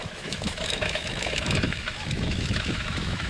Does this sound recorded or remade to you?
remade